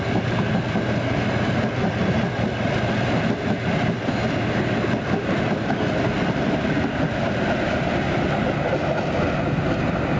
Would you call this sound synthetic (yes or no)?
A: no